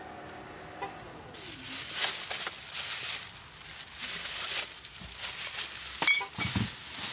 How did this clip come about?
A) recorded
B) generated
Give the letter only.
A